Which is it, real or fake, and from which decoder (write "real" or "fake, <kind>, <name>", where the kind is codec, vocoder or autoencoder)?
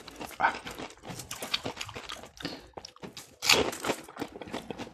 real